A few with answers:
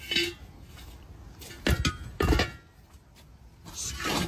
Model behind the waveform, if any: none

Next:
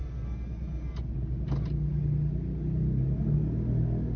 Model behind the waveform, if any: none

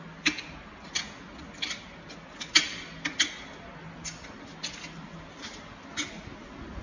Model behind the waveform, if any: none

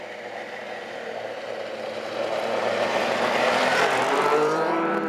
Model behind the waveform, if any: vocoder, BigVGAN v2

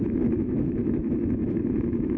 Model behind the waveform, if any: autoencoder, DAC-VAE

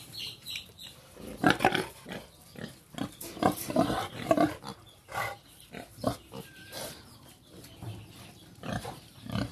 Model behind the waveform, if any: vocoder, BigVGAN v2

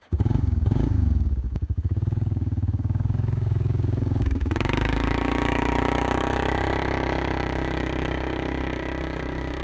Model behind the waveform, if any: codec, DAC